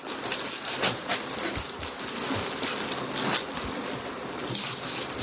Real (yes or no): yes